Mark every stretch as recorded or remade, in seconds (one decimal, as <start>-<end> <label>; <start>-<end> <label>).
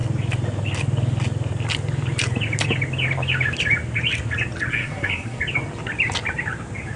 0.0-4.7 recorded; 4.7-5.4 remade; 5.4-7.0 recorded